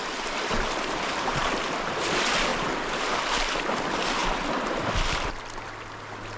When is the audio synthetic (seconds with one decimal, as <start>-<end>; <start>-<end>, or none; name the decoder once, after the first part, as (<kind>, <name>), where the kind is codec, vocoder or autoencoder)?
0.0-1.5 (vocoder, BigVGAN v2); 2.5-3.2